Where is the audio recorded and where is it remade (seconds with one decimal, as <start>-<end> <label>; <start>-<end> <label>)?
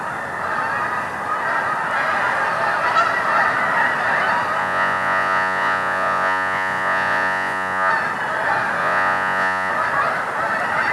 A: 0.0-4.6 recorded; 4.6-7.9 remade; 7.9-8.8 recorded; 8.8-9.7 remade; 9.7-10.9 recorded